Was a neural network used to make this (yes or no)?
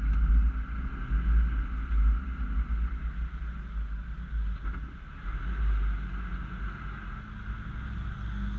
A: no